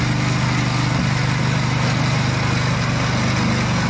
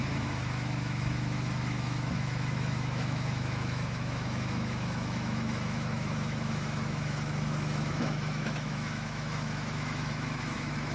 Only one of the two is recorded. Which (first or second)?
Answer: first